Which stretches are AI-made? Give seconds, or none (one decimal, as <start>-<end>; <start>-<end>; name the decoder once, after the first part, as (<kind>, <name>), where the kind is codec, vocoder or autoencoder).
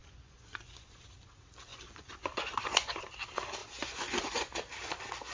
0.0-1.0 (vocoder, Vocos); 1.7-3.1; 3.6-4.5